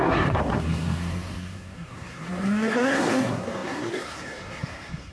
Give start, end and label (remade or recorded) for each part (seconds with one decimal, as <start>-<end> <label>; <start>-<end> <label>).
0.0-5.1 remade